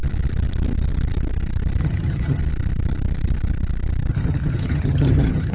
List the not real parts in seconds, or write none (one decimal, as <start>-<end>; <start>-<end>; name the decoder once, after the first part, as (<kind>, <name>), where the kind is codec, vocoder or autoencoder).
1.8-2.4 (vocoder, HiFi-GAN); 4.1-5.5